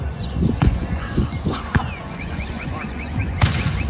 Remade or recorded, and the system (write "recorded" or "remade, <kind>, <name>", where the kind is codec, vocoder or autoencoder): remade, vocoder, Vocos